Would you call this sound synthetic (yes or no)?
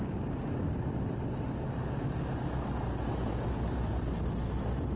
no